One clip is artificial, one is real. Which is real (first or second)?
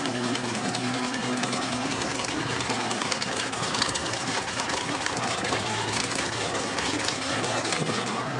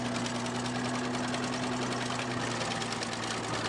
second